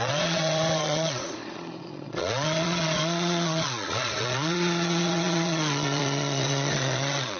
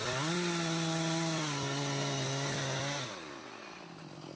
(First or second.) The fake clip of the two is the first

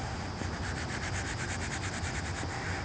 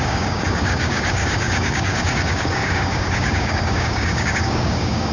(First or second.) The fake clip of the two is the second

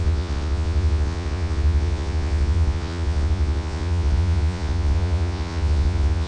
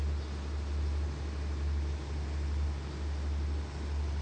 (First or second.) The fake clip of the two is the first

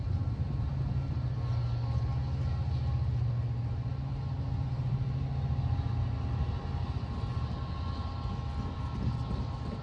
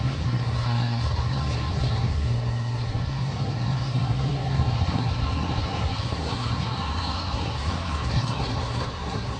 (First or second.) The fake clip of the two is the second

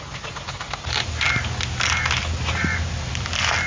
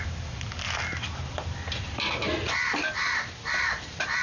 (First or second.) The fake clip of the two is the second